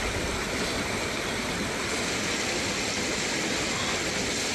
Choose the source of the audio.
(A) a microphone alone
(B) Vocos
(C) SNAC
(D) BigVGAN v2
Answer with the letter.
A